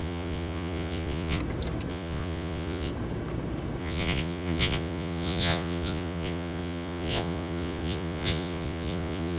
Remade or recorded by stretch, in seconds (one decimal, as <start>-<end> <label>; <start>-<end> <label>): 0.0-1.4 remade; 1.4-1.9 recorded; 1.9-2.9 remade; 2.9-3.8 recorded; 3.8-9.4 remade